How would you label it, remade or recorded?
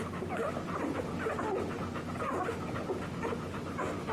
recorded